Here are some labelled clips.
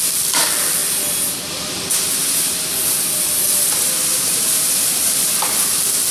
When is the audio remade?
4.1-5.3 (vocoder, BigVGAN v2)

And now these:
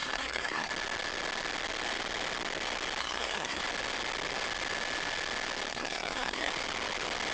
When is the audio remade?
0.0-0.7 (codec, SNAC); 3.0-3.6; 5.7-6.5

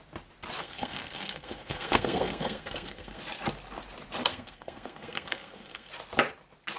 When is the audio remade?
0.6-3.2 (codec, SNAC); 4.3-5.9

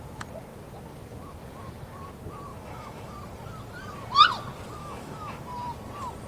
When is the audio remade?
2.5-3.1 (autoencoder, DAC-VAE); 4.8-5.4